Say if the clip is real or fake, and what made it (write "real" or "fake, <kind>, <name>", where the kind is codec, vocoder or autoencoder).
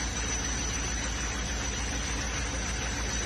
real